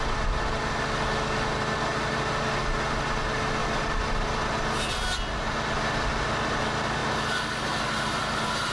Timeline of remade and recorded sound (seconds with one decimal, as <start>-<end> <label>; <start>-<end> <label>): 0.0-8.7 recorded